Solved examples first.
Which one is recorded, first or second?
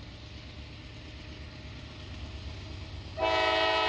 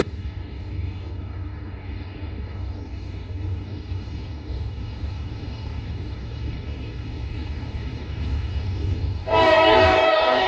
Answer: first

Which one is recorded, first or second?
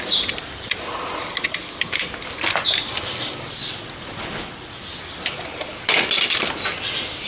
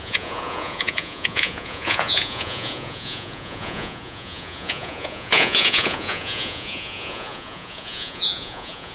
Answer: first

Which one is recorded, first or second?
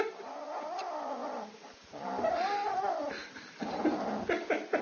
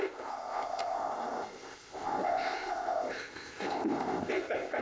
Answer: first